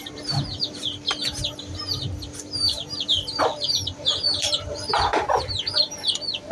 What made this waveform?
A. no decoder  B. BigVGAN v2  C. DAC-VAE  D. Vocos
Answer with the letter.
B